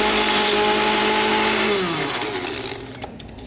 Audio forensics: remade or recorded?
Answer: remade